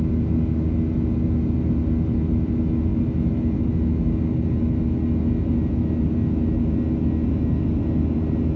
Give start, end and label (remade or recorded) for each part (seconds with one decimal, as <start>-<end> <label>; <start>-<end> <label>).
0.0-8.6 recorded